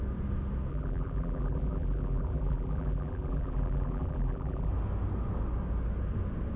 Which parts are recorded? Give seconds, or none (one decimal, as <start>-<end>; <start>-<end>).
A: 0.0-0.7; 4.7-6.6